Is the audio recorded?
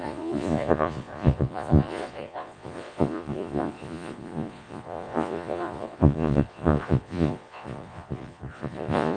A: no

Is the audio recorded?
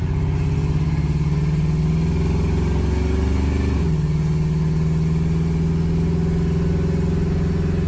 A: yes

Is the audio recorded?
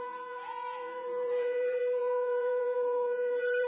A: no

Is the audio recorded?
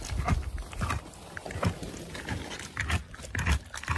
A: yes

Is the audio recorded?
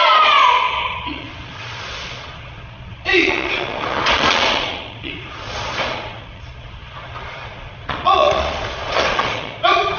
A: no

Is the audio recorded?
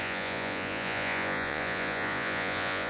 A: no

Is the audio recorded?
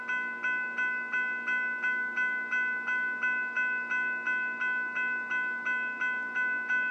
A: yes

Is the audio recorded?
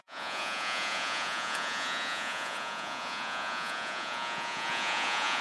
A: no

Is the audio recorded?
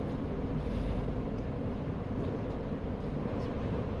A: yes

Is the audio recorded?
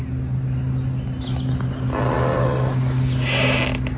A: yes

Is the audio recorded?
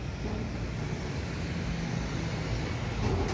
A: yes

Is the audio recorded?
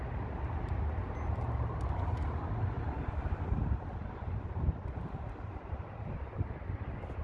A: yes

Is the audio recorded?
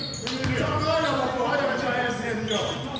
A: yes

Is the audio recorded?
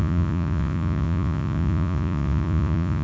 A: no